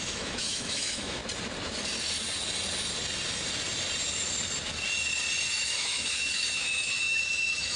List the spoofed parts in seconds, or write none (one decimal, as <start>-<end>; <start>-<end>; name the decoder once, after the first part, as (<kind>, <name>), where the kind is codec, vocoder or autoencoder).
0.0-1.2 (autoencoder, DAC-VAE); 5.5-7.8